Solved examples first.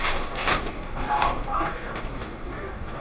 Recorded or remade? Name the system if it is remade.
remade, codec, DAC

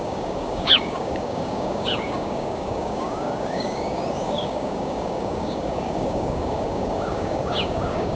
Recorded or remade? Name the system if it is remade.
remade, codec, DAC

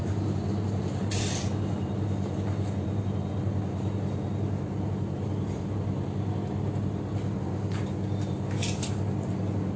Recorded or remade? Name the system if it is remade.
recorded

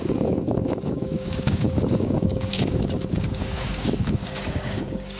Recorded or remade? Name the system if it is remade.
remade, codec, DAC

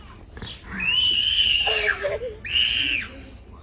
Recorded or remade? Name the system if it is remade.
recorded